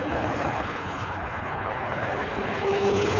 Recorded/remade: remade